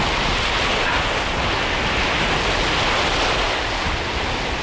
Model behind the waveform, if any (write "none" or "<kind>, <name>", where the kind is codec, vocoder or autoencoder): none